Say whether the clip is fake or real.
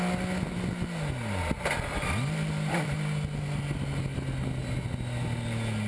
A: real